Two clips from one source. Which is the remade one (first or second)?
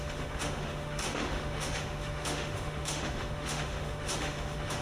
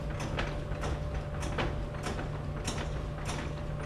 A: first